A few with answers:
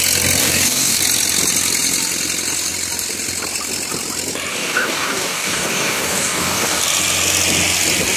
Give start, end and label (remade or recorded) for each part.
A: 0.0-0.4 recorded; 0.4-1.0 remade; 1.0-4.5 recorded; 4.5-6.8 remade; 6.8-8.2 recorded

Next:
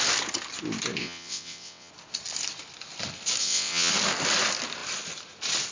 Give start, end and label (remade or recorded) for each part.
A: 0.0-1.0 recorded; 1.0-1.9 remade; 1.9-3.4 recorded; 3.4-3.9 remade; 3.9-5.7 recorded

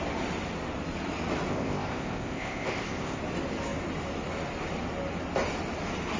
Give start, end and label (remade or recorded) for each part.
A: 0.0-1.5 recorded; 1.5-3.2 remade; 3.2-6.2 recorded

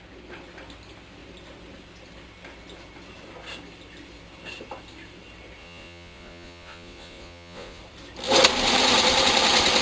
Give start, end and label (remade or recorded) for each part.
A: 0.0-5.6 recorded; 5.6-7.8 remade; 7.8-9.8 recorded